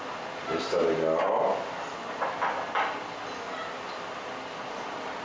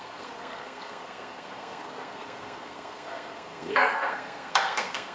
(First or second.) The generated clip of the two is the second